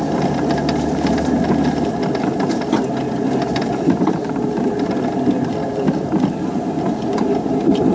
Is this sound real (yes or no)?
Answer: yes